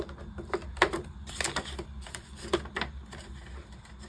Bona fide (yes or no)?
yes